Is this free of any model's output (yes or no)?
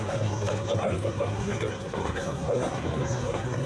no